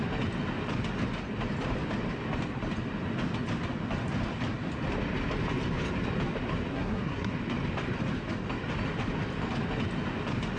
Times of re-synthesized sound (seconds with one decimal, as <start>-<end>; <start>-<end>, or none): 6.7-7.3